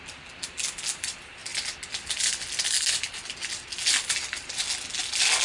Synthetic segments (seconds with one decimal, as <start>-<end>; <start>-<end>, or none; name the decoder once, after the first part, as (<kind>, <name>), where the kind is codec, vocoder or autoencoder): none